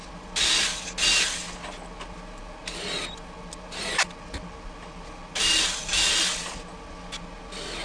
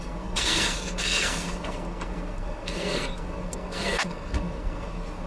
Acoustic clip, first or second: first